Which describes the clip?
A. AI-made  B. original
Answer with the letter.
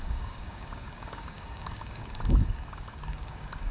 A